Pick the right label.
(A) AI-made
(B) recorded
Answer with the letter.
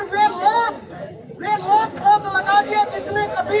A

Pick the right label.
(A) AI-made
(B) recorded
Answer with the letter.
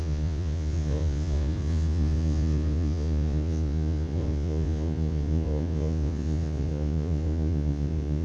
A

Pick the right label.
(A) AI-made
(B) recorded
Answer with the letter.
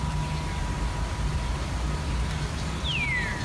B